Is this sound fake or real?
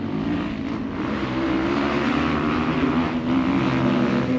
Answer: real